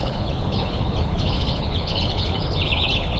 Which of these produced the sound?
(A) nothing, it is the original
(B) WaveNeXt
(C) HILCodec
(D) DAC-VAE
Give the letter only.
C